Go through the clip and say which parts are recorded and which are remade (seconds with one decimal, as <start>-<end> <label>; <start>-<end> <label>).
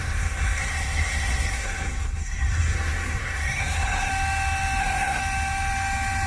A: 0.0-4.1 remade; 4.1-4.8 recorded; 4.8-5.2 remade; 5.2-6.3 recorded